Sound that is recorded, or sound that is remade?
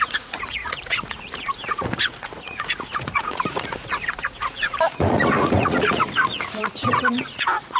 remade